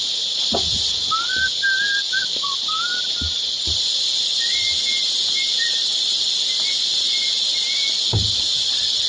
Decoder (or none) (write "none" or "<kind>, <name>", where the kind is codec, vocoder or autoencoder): none